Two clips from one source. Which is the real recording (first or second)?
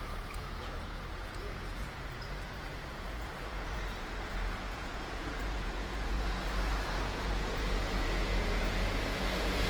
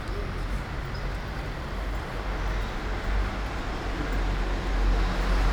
second